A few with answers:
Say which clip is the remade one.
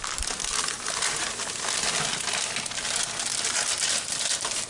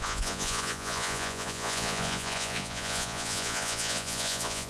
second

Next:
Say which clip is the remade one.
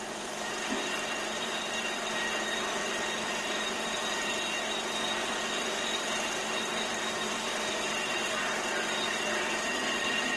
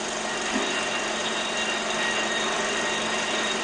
first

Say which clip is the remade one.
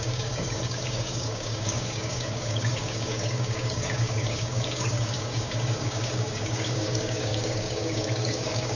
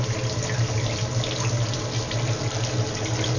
first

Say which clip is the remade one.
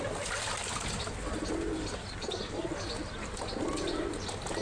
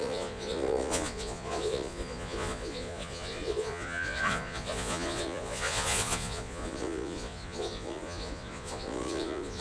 second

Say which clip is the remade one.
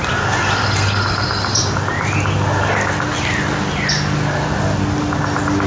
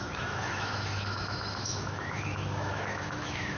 second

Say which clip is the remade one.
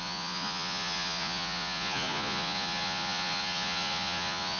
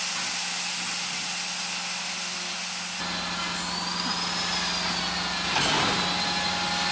first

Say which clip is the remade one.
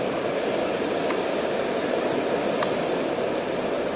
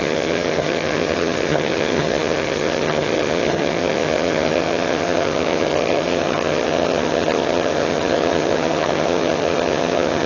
second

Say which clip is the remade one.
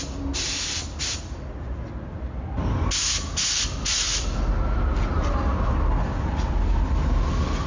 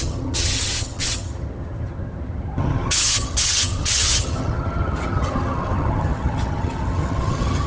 second